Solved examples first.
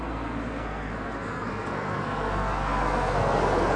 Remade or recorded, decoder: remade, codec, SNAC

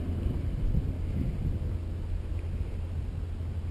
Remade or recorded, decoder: recorded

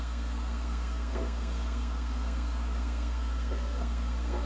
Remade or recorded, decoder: remade, codec, SNAC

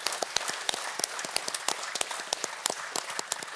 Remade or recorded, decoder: recorded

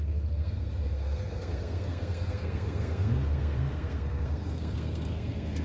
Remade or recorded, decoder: remade, codec, SNAC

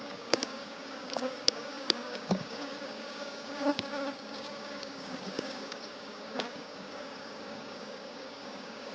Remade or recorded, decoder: remade, codec, DAC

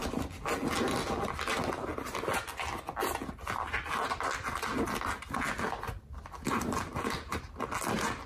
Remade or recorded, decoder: recorded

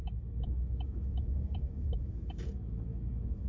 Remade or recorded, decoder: remade, autoencoder, DAC-VAE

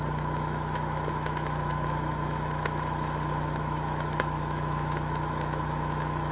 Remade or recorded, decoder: remade, autoencoder, DAC-VAE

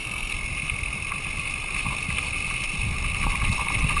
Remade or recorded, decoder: recorded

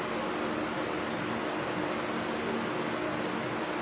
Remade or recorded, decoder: recorded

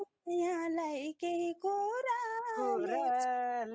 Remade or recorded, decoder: recorded